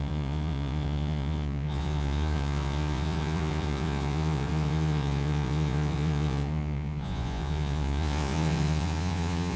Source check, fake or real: fake